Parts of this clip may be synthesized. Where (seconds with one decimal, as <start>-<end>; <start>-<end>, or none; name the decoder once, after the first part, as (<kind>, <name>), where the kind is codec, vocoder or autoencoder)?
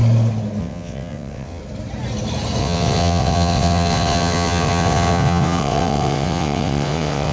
0.6-1.6 (vocoder, WaveNeXt); 2.6-7.3